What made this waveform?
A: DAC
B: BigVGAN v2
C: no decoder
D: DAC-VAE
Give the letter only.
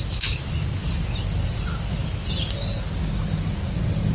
C